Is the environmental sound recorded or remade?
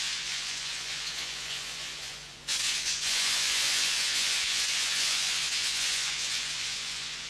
remade